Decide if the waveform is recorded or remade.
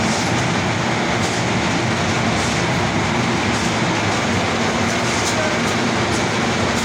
recorded